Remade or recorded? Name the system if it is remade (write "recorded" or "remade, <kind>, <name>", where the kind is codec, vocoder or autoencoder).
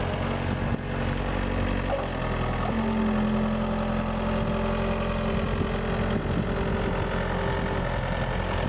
recorded